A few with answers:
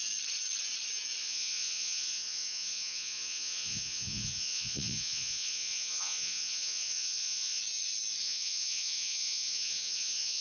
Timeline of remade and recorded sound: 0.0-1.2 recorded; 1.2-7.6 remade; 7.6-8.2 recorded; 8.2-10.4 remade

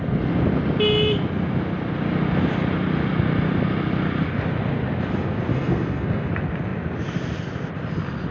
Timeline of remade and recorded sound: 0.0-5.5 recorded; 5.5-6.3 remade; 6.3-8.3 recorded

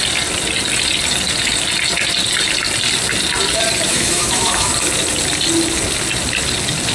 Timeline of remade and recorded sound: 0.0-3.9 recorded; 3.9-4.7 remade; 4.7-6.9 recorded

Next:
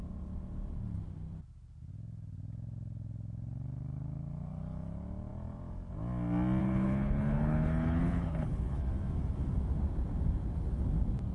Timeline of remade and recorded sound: 0.0-6.6 recorded; 6.6-8.9 remade; 8.9-11.3 recorded